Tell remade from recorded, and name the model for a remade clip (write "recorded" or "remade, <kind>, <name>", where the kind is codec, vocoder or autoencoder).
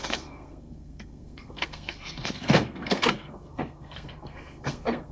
remade, codec, SNAC